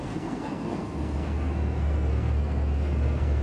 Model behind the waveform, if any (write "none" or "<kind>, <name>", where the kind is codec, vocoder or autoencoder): codec, SNAC